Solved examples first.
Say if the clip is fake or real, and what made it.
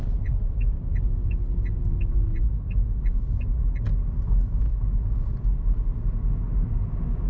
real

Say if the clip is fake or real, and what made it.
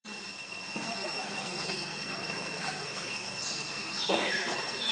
fake, codec, SNAC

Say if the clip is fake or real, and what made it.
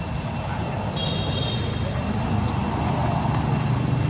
real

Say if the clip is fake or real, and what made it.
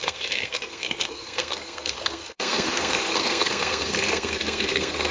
fake, codec, SNAC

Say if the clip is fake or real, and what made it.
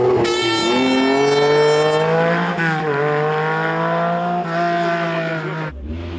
real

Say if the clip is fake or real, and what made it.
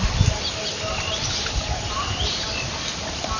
real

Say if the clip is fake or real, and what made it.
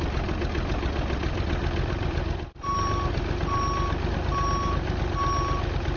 real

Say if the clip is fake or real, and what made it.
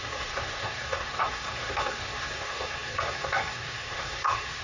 fake, codec, SNAC